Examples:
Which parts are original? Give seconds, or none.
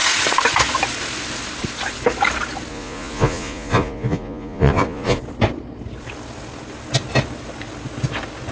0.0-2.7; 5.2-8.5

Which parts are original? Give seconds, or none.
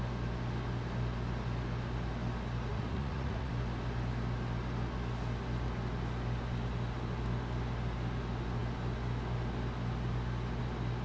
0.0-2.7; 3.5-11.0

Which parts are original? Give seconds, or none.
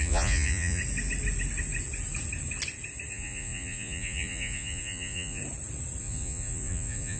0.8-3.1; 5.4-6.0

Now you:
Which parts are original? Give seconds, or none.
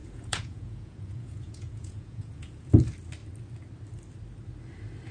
2.7-5.1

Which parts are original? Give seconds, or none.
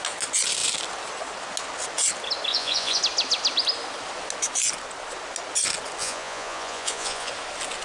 0.0-2.5; 3.0-6.0; 7.3-7.8